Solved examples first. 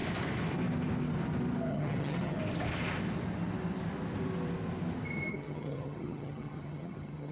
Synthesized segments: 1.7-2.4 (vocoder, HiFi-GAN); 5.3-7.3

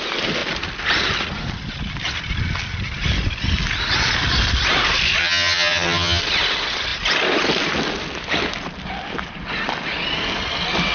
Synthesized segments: 5.2-6.2 (vocoder, HiFi-GAN)

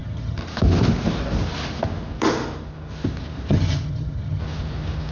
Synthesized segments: 0.0-0.4 (vocoder, HiFi-GAN); 3.5-4.4

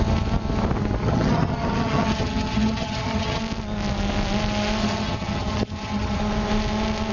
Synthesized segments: 1.0-3.4 (vocoder, HiFi-GAN); 4.8-6.2

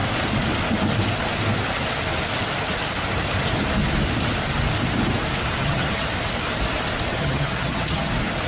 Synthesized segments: 5.6-6.1 (vocoder, HiFi-GAN); 7.1-8.1

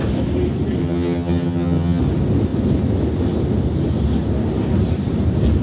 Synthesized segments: 0.8-2.0 (vocoder, HiFi-GAN)